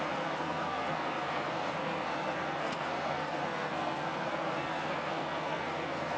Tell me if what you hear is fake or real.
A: fake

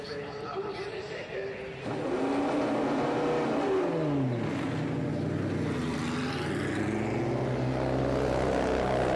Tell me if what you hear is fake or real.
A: real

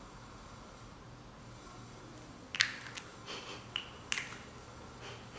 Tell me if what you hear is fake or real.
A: real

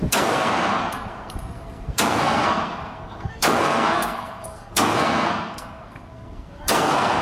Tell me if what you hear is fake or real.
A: fake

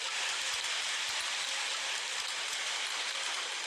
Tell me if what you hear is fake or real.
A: real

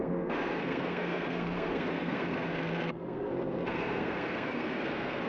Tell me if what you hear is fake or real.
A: fake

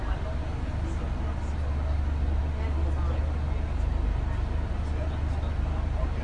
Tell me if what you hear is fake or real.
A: real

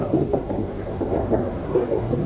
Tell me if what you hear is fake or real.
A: fake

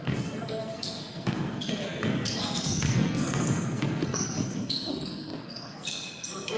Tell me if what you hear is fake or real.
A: fake